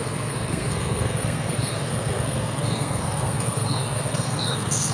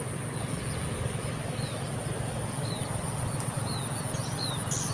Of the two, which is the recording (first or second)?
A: second